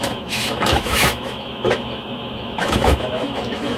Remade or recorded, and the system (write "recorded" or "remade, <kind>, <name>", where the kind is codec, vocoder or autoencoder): remade, autoencoder, DAC-VAE